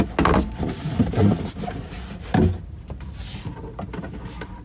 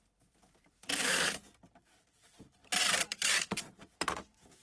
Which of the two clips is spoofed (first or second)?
second